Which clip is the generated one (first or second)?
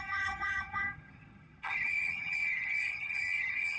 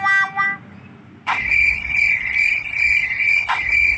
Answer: first